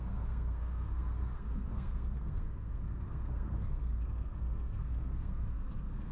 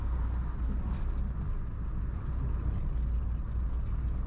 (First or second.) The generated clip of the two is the first